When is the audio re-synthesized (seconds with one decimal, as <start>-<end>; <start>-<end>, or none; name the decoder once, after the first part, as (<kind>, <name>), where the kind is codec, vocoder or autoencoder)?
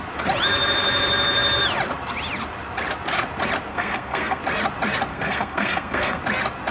3.7-4.4 (codec, SNAC); 5.1-6.2